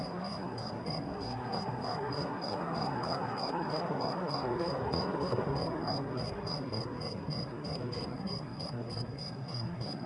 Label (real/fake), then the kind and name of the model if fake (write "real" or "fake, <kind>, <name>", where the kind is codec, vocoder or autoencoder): fake, codec, SNAC